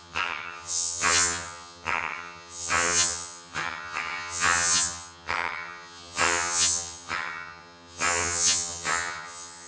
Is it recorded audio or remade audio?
remade